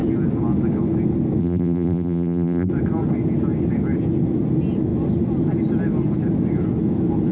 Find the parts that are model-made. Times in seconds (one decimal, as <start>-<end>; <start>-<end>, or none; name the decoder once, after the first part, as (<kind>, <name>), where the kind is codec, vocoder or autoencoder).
1.4-2.7 (vocoder, BigVGAN v2)